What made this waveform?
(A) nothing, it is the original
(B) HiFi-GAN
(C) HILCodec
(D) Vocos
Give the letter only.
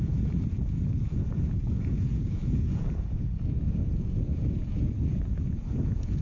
D